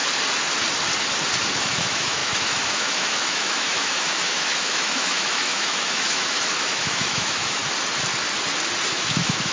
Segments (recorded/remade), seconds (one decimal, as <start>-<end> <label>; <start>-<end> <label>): 0.0-1.5 recorded; 1.5-7.6 remade; 7.6-8.9 recorded; 8.9-9.5 remade